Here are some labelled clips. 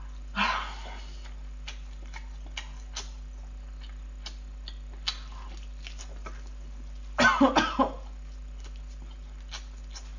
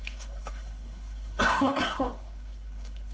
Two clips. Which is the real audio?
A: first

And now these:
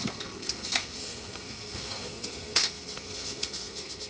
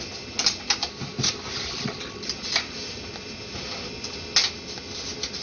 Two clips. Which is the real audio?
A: second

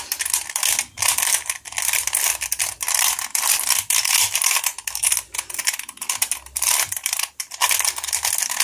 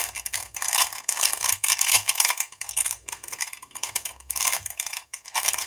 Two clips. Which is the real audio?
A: first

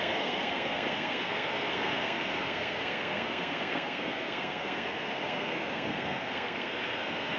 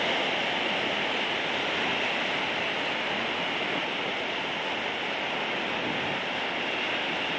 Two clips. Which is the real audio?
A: second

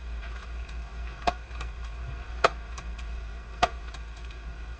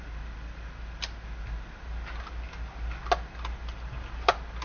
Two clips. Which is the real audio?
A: second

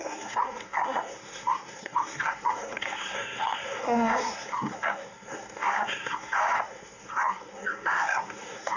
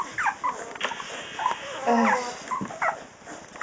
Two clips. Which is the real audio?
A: second